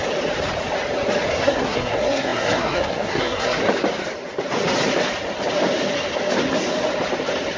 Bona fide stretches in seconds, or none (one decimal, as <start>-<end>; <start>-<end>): 0.0-1.3; 3.6-7.6